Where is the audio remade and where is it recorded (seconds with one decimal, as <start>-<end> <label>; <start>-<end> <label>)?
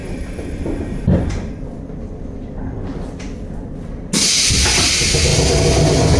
0.0-3.7 remade; 3.7-6.2 recorded